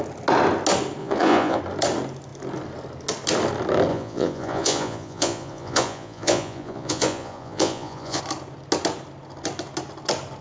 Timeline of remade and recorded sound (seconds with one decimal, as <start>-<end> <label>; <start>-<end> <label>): 0.0-1.0 recorded; 1.0-1.6 remade; 1.6-3.9 recorded; 3.9-8.2 remade; 8.2-10.4 recorded